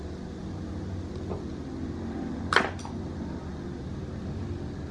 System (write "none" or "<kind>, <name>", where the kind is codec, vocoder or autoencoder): none